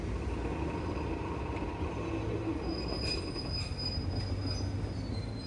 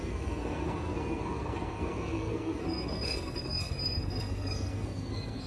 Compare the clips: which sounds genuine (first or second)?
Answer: first